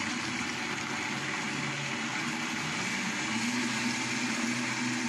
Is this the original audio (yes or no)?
yes